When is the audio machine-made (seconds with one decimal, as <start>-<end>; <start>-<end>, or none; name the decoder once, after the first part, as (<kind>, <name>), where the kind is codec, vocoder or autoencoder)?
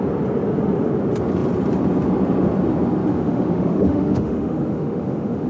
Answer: 3.1-5.5 (autoencoder, DAC-VAE)